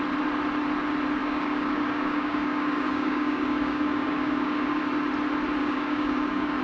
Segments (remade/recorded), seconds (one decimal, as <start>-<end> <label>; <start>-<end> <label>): 0.0-1.2 recorded; 1.2-4.8 remade; 4.8-5.6 recorded; 5.6-6.6 remade